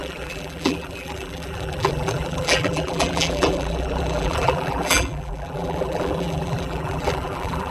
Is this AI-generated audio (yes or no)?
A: yes